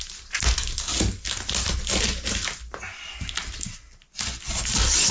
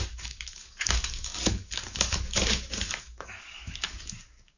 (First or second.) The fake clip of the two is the second